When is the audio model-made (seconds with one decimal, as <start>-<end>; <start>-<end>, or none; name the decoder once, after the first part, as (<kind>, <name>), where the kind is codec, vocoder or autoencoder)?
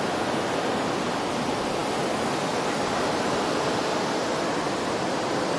none